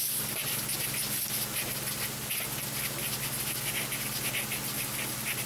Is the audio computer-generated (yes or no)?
no